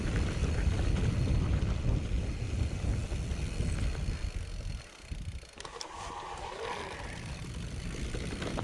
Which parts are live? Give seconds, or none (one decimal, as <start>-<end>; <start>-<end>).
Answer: 3.0-4.8